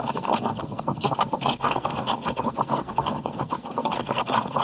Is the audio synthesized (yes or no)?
yes